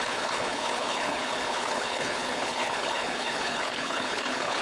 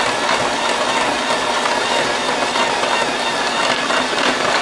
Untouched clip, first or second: second